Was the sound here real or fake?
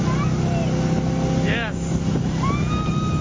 real